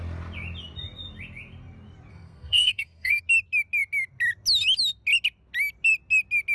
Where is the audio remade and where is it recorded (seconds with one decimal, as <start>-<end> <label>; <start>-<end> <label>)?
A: 0.0-2.1 recorded; 2.1-3.2 remade; 3.2-6.5 recorded